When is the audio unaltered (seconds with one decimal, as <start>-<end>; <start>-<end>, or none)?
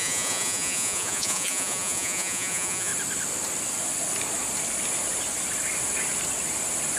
2.9-7.0